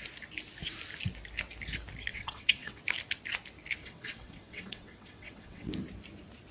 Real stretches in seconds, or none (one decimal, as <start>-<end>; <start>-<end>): 0.0-2.1; 2.8-3.8; 5.7-6.5